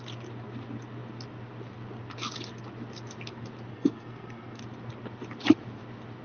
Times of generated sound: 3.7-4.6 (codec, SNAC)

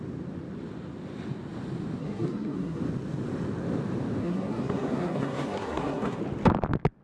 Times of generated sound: 2.0-2.8 (codec, SNAC); 4.2-6.2

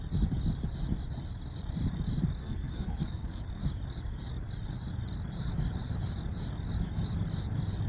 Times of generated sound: 2.4-3.4 (codec, SNAC)

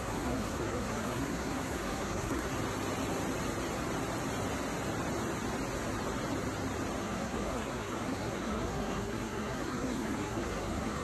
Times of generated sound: 0.0-2.5 (codec, SNAC); 7.0-11.0

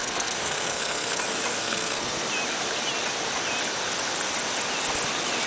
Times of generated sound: 0.0-1.2 (codec, SNAC); 1.6-2.1